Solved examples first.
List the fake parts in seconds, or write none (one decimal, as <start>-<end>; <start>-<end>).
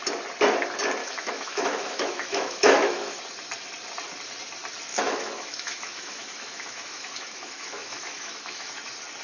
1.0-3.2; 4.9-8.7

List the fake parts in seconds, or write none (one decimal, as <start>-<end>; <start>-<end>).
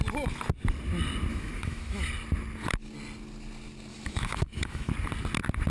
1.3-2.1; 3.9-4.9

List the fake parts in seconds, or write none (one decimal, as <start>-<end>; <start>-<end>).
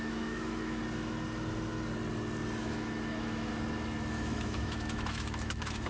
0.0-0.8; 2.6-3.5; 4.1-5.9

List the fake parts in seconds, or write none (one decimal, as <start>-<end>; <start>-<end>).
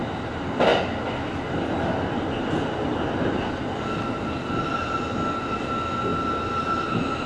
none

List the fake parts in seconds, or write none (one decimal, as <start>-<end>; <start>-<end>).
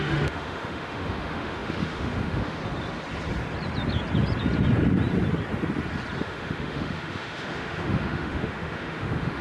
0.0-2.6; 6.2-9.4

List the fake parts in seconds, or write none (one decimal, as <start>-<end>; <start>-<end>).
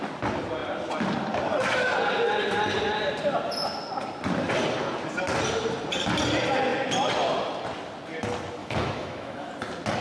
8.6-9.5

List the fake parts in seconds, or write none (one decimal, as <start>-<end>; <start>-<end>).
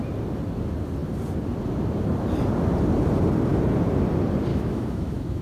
4.5-5.4